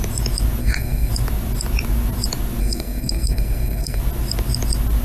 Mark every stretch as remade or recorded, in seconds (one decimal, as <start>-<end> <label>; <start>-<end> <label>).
0.0-0.6 recorded; 0.6-1.1 remade; 1.1-2.6 recorded; 2.6-4.0 remade; 4.0-5.0 recorded